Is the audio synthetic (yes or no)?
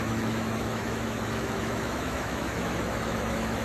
yes